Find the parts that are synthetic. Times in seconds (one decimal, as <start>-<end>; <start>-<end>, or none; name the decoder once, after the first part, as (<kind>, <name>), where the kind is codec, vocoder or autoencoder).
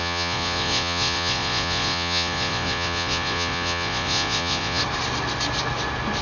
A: 0.0-4.8 (vocoder, Vocos)